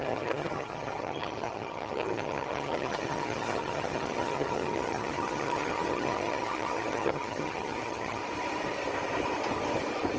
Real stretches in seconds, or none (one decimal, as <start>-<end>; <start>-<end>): 8.2-10.2